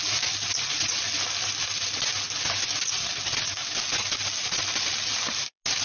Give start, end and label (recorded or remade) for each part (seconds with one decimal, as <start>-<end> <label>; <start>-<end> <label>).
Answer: 0.0-5.8 recorded